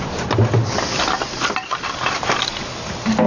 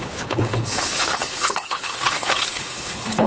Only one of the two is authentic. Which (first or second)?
first